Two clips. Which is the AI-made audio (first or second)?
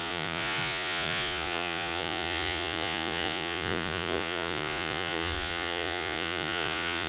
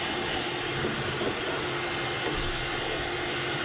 first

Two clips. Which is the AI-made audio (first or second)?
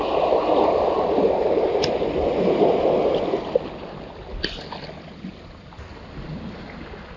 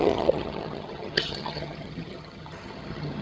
second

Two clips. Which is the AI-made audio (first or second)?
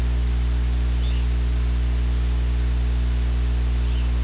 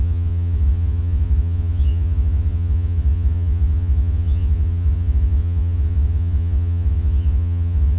second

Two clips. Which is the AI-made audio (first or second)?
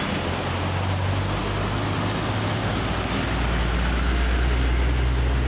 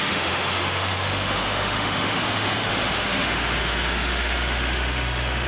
second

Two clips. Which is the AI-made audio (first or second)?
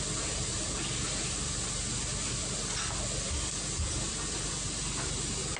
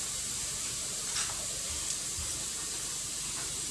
second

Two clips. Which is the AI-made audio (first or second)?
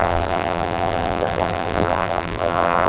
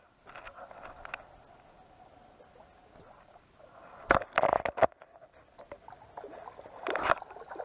first